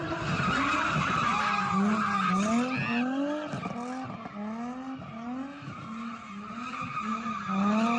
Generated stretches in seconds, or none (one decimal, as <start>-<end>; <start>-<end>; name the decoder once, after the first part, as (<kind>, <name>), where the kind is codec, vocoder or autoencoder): none